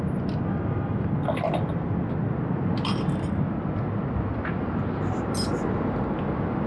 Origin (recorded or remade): recorded